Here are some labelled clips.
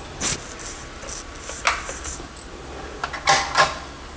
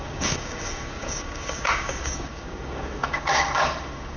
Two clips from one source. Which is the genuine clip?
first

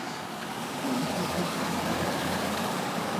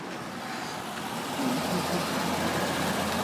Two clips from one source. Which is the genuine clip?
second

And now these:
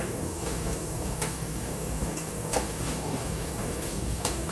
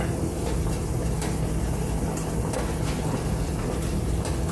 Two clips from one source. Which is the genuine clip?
second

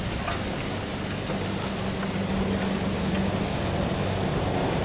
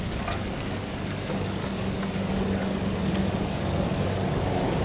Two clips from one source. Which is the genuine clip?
first